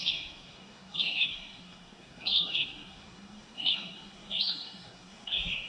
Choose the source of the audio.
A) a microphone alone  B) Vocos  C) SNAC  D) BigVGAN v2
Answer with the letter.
C